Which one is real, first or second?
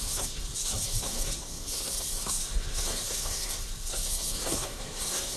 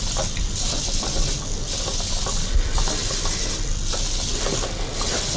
second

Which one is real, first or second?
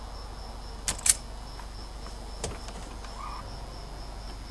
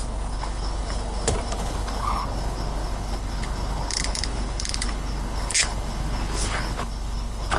first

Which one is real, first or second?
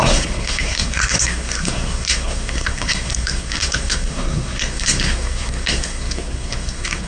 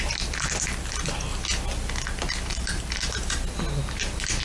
second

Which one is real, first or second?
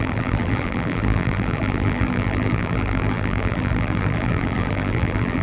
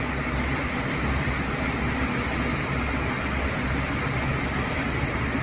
second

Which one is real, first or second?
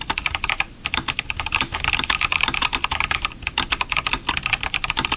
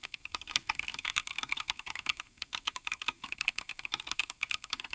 first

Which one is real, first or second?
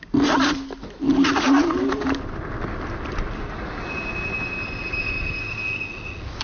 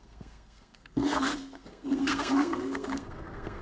first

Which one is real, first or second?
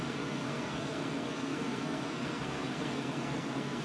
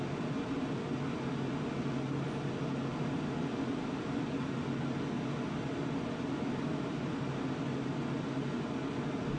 second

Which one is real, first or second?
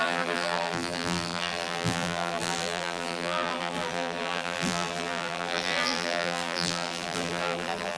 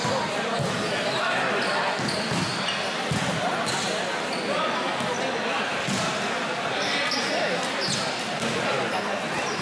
second